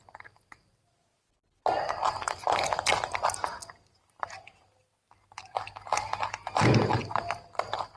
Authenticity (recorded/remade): recorded